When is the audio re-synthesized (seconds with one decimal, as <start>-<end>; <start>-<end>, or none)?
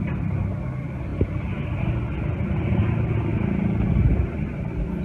none